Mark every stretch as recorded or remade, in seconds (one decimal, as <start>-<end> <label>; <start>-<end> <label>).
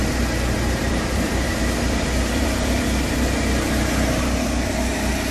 0.0-0.8 recorded; 0.8-2.8 remade; 2.8-5.3 recorded